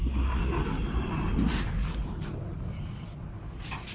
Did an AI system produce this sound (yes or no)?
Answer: no